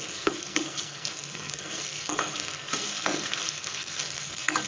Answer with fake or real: fake